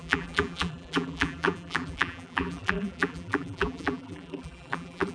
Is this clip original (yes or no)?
no